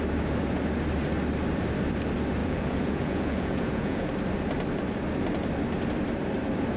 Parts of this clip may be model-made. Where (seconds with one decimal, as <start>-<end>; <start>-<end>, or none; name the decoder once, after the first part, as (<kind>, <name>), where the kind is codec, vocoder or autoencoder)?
2.4-4.1 (vocoder, Vocos)